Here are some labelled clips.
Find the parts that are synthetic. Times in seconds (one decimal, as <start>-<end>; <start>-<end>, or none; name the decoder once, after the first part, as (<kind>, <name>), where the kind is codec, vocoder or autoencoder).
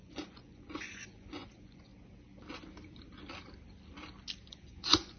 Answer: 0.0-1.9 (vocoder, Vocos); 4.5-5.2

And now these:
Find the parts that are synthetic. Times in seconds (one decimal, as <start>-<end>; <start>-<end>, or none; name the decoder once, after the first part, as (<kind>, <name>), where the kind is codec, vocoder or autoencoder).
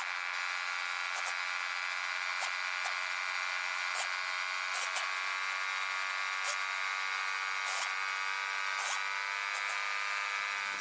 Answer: none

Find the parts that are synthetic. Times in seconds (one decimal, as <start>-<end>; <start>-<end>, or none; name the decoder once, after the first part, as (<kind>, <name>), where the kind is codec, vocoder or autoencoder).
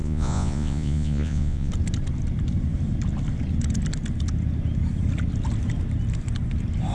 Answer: 0.0-1.7 (vocoder, Vocos)